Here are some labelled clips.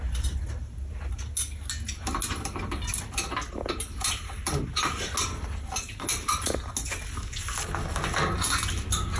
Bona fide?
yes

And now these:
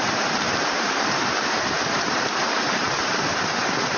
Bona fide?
no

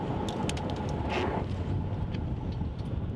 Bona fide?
yes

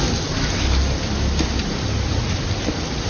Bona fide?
no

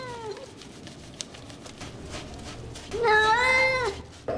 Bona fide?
yes